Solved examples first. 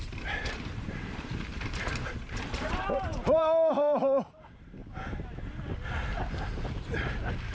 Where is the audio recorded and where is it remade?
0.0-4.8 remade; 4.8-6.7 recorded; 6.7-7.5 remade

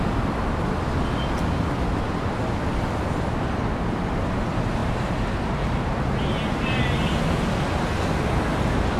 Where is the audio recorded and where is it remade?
0.0-4.8 recorded; 4.8-6.0 remade; 6.0-9.0 recorded

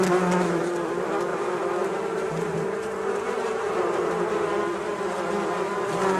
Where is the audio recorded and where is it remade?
0.0-1.3 recorded; 1.3-4.3 remade; 4.3-6.2 recorded

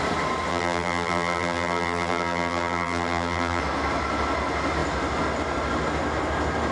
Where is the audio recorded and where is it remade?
0.0-0.5 recorded; 0.5-3.6 remade; 3.6-6.7 recorded